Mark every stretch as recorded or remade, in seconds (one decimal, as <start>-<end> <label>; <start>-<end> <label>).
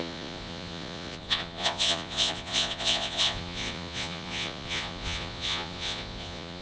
0.0-6.6 remade